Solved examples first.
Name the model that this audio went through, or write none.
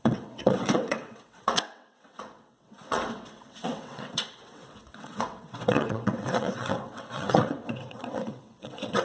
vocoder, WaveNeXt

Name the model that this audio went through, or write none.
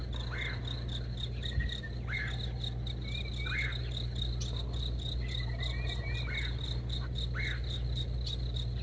none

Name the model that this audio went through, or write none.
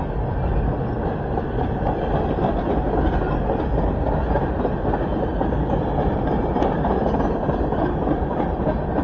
none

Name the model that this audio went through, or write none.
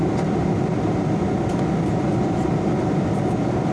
none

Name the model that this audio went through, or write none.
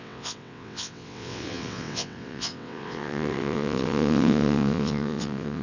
vocoder, WaveNeXt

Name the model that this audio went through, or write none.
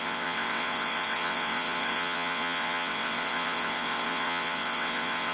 vocoder, WaveNeXt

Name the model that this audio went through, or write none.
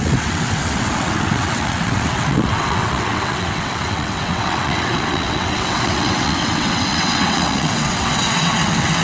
vocoder, WaveNeXt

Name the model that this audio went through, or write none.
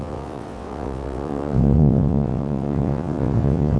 vocoder, WaveNeXt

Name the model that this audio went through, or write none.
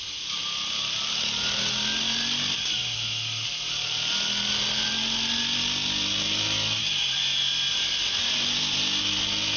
none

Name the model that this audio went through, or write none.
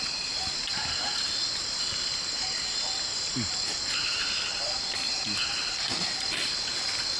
none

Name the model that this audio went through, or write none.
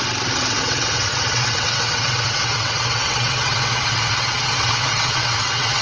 vocoder, WaveNeXt